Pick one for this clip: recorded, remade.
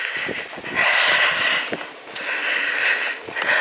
recorded